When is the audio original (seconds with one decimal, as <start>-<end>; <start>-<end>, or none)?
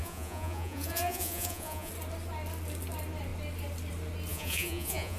1.9-4.3